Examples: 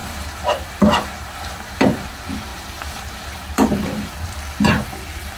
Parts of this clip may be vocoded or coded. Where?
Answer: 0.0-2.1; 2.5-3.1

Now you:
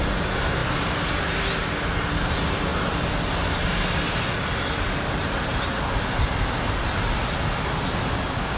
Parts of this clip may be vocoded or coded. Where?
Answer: 0.6-1.2